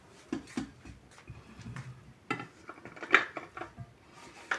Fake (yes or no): no